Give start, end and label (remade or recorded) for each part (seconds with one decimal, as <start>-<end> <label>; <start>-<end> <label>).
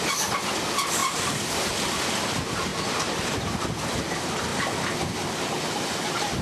0.0-1.0 recorded; 1.0-2.0 remade; 2.0-2.7 recorded; 2.7-3.6 remade; 3.6-4.5 recorded; 4.5-6.4 remade